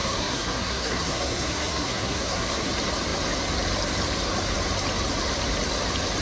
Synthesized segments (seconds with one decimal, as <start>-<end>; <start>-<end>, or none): 0.0-2.7